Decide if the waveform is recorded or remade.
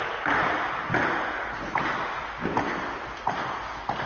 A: recorded